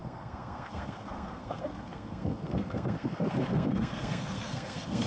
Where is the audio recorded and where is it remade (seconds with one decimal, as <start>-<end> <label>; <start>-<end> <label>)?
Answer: 0.0-5.1 remade